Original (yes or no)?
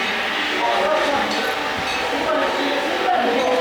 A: no